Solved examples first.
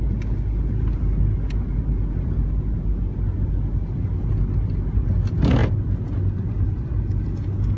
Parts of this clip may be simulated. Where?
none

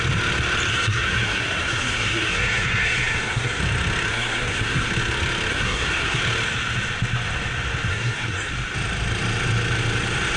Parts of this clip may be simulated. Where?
0.7-3.6; 4.1-4.9; 5.5-6.2; 7.9-8.5

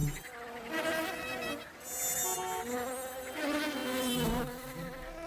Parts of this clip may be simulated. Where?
none